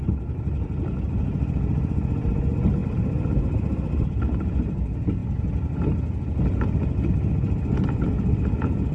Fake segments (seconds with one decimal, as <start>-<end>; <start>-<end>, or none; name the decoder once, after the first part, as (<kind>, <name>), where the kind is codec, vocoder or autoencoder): none